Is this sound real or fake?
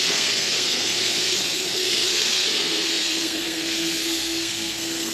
fake